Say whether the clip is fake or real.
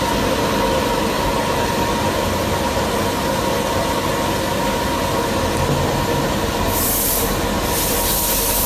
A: real